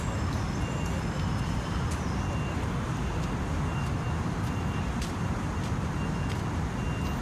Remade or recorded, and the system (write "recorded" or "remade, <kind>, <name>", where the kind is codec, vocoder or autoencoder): recorded